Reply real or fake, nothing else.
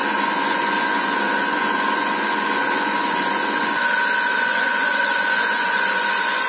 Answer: fake